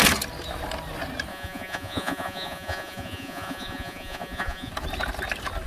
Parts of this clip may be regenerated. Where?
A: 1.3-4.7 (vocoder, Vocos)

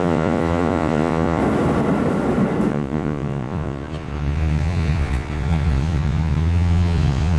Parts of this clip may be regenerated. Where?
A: 0.0-1.4 (vocoder, Vocos); 2.7-7.4

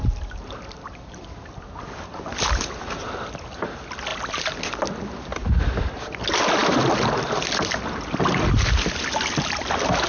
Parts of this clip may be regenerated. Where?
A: none